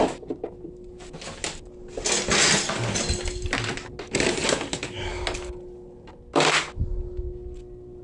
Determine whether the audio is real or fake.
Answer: real